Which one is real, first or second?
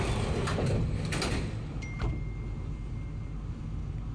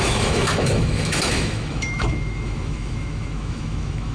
first